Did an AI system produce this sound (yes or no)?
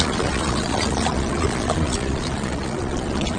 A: yes